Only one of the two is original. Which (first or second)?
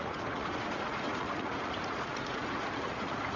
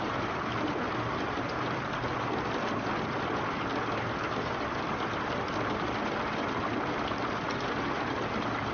second